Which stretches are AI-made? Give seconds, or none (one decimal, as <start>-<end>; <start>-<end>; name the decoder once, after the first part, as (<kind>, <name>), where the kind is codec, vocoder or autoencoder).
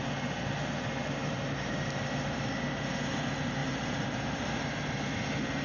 1.2-2.5 (vocoder, BigVGAN v2); 3.6-4.6